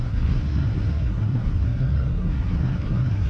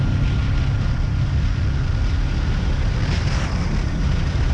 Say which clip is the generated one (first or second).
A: first